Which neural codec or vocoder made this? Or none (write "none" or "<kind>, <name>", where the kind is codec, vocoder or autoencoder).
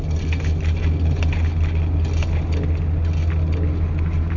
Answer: none